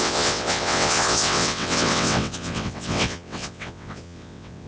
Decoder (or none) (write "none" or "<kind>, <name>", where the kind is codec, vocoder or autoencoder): vocoder, WaveNeXt